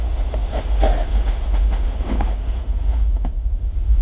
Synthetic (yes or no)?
yes